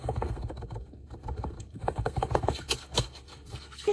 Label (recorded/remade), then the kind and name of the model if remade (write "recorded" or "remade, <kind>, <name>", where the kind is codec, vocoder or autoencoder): remade, codec, SNAC